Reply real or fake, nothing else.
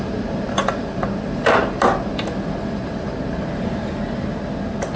real